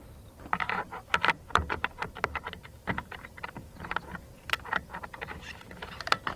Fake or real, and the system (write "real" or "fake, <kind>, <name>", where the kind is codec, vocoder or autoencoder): fake, vocoder, BigVGAN v2